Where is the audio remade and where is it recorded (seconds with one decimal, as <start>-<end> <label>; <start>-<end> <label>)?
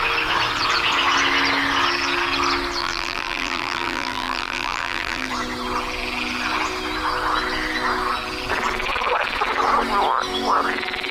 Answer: 0.0-2.8 recorded; 2.8-5.3 remade; 5.3-11.1 recorded